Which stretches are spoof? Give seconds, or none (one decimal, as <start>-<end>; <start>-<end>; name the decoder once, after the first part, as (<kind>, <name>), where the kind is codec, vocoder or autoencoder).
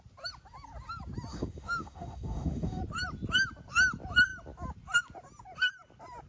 1.3-2.8 (autoencoder, DAC-VAE)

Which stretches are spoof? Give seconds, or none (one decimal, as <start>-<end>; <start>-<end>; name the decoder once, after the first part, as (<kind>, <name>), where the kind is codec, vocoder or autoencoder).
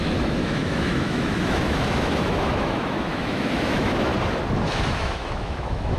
0.0-4.1 (autoencoder, DAC-VAE); 4.7-6.0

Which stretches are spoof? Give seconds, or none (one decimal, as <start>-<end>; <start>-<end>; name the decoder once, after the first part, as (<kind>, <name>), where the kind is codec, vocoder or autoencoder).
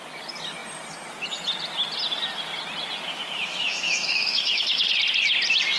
3.1-4.9 (autoencoder, DAC-VAE)